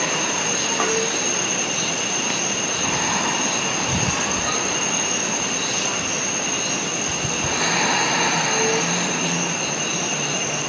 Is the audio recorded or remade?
recorded